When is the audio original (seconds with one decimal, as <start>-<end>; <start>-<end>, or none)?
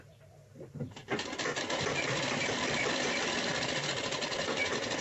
0.0-5.0